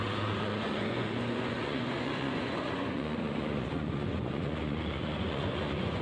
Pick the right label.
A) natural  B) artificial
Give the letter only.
B